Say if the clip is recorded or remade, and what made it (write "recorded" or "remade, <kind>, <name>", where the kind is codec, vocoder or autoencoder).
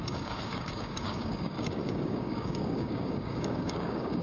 remade, codec, DAC